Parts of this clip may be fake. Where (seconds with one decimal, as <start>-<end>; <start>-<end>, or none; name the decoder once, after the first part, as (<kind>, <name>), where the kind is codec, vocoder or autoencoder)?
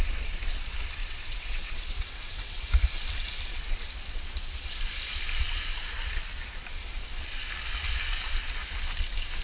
1.0-2.6 (vocoder, WaveNeXt)